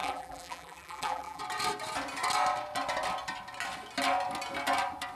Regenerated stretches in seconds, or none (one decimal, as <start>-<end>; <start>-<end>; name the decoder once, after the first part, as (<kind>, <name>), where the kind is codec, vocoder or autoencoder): 0.0-1.4 (vocoder, BigVGAN v2)